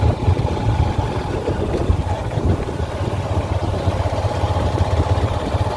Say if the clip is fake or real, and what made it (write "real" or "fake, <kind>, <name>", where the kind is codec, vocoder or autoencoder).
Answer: real